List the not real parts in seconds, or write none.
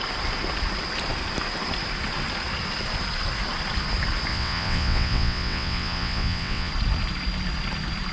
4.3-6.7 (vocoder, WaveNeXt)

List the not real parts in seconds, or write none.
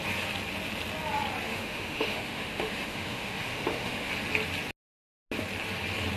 1.5-4.1 (autoencoder, DAC-VAE)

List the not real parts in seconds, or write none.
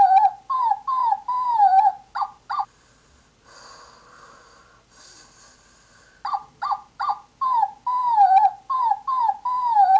none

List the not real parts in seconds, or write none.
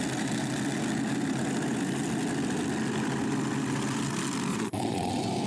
4.5-5.1 (vocoder, Vocos)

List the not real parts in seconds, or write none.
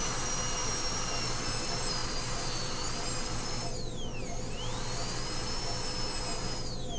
none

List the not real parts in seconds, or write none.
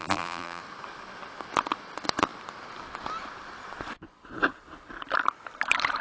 0.0-0.6 (vocoder, BigVGAN v2)